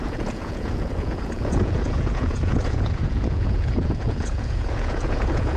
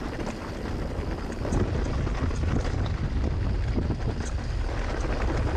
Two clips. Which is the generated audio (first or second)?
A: first